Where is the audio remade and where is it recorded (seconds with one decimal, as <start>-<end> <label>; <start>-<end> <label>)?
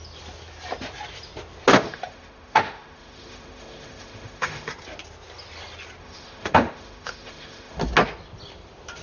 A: 0.0-1.7 recorded; 1.7-4.7 remade; 4.7-6.0 recorded; 6.0-7.8 remade; 7.8-9.0 recorded